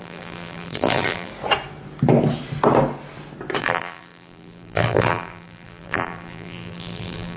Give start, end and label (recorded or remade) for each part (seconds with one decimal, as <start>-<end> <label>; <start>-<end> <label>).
0.0-1.3 remade; 1.3-3.6 recorded; 3.6-7.4 remade